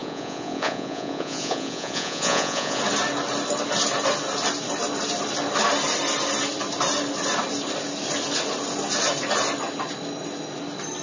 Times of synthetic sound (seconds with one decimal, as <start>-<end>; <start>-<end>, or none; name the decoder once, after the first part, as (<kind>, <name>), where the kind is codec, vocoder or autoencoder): 0.0-2.8 (vocoder, Vocos)